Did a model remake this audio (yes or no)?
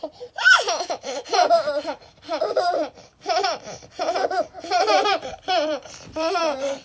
yes